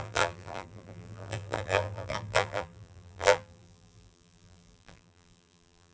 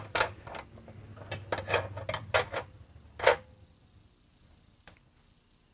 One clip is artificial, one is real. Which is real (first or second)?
second